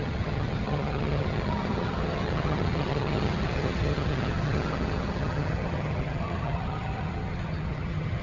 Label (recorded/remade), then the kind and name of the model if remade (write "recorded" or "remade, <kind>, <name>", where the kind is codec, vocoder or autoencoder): remade, vocoder, HiFi-GAN